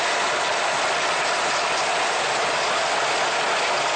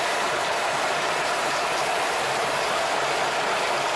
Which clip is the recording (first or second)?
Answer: first